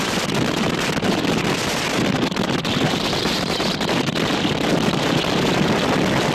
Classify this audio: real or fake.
fake